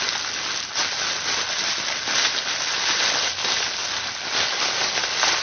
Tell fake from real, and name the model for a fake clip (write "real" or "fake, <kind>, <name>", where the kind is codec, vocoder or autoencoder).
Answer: real